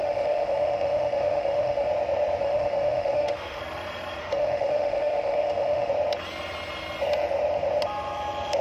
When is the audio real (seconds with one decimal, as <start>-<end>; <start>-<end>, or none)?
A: 1.9-2.4; 3.6-4.2; 5.9-8.6